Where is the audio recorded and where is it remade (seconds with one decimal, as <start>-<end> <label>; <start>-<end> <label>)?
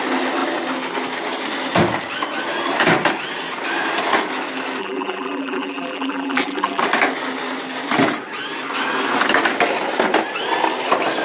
0.0-4.8 recorded; 4.8-6.8 remade; 6.8-11.2 recorded